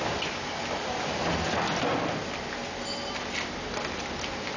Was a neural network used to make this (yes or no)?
no